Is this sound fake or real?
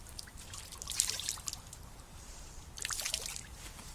fake